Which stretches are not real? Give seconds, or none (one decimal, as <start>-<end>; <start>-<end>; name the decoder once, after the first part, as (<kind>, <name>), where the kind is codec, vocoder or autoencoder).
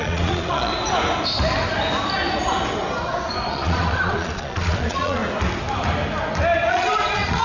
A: 0.0-0.7 (vocoder, Vocos); 3.5-5.2; 6.7-7.4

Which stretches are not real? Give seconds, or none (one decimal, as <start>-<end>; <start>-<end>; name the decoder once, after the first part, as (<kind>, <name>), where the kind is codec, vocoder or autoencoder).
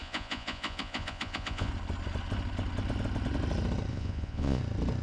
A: 0.0-1.7 (vocoder, Vocos); 3.9-4.6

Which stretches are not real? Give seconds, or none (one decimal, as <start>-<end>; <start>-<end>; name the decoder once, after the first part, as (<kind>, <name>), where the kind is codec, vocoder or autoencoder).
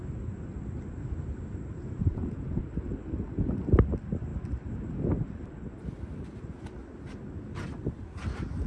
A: 2.1-2.6 (vocoder, Vocos)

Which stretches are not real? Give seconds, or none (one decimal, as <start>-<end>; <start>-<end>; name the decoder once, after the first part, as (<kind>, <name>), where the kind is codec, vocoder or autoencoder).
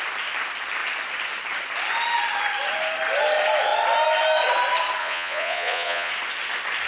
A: 5.0-6.1 (vocoder, Vocos)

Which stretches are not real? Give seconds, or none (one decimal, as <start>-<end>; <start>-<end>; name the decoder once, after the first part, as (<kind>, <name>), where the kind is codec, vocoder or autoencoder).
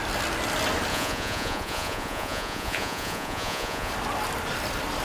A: 0.9-3.9 (vocoder, Vocos)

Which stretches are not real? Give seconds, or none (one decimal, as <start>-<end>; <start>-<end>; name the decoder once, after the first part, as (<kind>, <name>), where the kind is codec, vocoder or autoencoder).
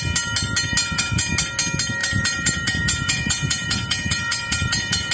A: 0.8-1.3 (vocoder, Vocos); 2.0-5.1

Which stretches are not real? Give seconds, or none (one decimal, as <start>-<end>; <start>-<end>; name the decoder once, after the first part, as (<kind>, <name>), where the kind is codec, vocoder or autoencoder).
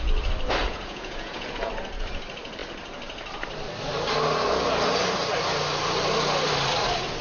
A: 0.6-1.7 (vocoder, Vocos)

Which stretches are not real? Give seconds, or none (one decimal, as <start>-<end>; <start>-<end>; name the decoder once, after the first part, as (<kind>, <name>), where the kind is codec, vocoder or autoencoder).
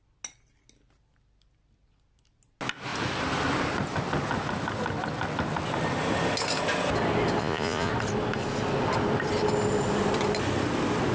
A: 7.4-7.9 (vocoder, Vocos)